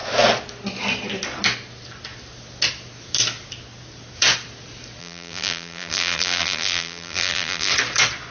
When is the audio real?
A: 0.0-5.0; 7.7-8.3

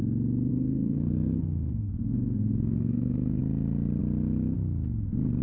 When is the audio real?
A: 0.0-0.5; 3.4-5.4

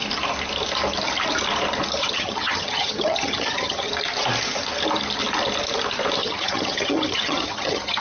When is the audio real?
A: 0.0-2.0; 3.9-6.2

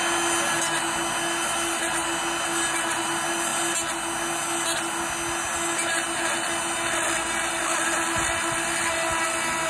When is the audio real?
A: 0.0-9.7

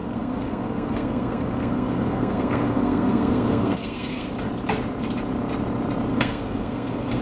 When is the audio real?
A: 4.3-6.1

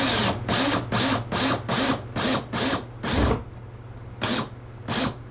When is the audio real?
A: 0.0-5.3

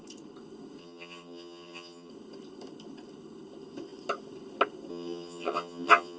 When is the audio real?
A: 0.0-0.8; 2.1-4.9